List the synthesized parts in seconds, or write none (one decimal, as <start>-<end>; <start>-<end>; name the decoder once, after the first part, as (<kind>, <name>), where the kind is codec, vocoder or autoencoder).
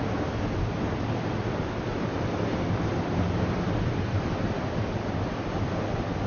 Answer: 0.0-6.3 (vocoder, BigVGAN v2)